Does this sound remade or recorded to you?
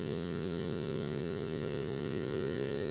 remade